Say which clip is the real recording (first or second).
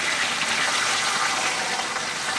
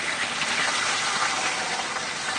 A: first